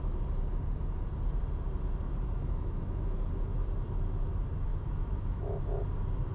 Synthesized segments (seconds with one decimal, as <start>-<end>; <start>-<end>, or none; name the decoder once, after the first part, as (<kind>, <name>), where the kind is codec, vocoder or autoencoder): 2.4-3.3 (autoencoder, DAC-VAE); 4.7-5.6